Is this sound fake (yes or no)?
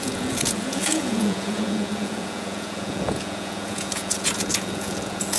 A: yes